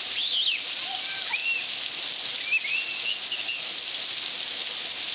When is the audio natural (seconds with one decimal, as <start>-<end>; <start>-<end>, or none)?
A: 0.0-5.1